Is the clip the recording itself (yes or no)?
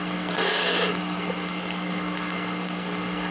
no